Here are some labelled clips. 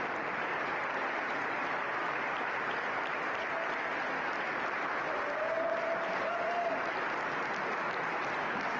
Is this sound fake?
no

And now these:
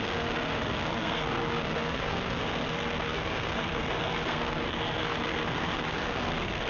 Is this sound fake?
yes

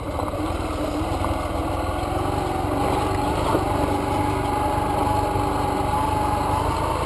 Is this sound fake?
no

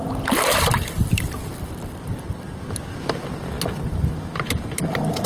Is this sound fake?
no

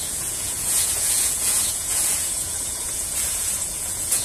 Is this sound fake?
yes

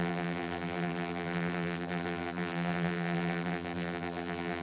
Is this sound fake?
yes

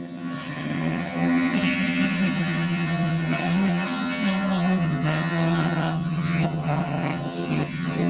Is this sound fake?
yes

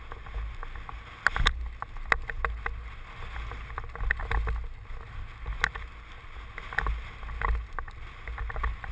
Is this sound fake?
no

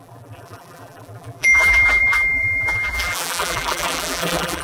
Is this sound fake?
yes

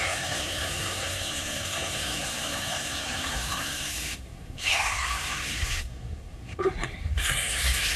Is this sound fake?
yes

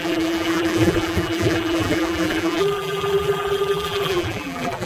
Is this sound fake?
yes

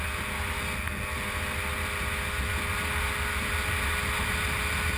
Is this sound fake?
no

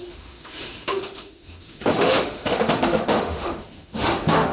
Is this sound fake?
yes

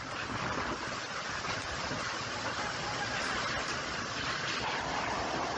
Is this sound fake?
yes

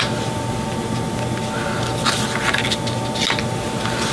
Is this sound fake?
no